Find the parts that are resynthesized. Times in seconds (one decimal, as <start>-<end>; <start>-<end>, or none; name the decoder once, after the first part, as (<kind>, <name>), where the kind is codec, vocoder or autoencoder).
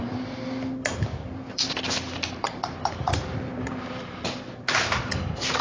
1.1-4.4 (vocoder, BigVGAN v2)